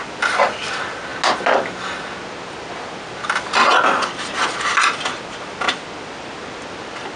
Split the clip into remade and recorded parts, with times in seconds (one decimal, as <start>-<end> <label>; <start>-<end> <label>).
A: 0.0-7.2 recorded